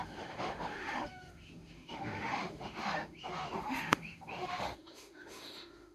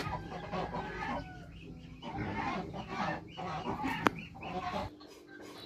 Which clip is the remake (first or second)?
first